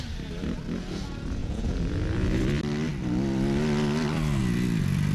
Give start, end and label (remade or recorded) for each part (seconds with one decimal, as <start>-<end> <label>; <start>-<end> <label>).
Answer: 0.0-1.4 recorded; 1.4-2.4 remade; 2.4-5.1 recorded

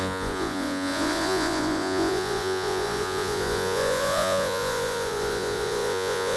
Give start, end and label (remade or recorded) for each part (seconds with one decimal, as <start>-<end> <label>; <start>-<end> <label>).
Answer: 0.0-6.4 remade

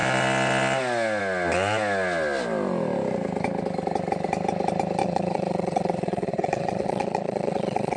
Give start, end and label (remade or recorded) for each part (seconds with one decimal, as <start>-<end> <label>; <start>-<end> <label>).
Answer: 0.0-5.0 recorded; 5.0-8.0 remade

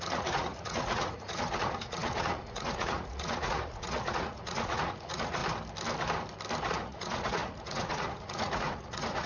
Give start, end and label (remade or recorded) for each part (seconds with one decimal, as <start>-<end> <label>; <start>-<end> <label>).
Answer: 0.0-5.4 remade; 5.4-6.7 recorded; 6.7-9.3 remade